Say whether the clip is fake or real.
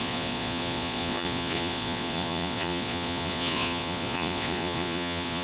fake